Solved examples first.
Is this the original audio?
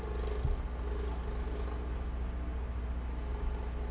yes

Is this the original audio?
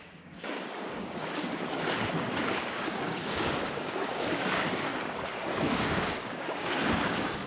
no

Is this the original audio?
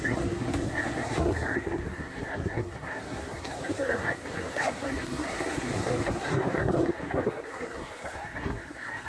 no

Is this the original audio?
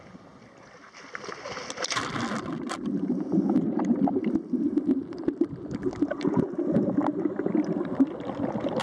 yes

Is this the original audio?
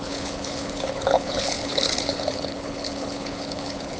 no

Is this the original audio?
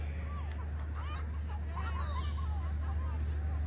yes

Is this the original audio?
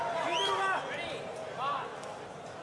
yes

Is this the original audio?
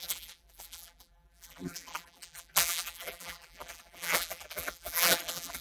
no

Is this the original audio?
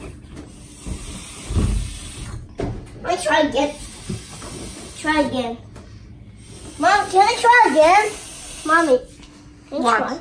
yes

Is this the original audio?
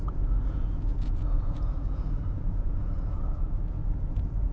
no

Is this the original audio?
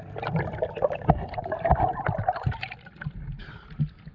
yes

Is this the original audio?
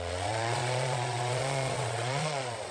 no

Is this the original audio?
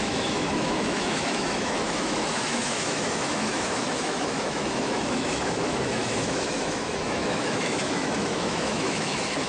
no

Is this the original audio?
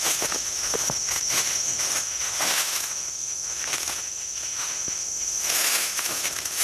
no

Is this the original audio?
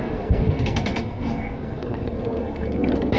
no